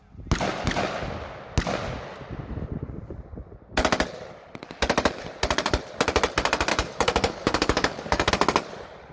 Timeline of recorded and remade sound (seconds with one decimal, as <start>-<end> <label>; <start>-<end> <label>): 0.0-6.7 recorded; 6.7-8.3 remade; 8.3-9.1 recorded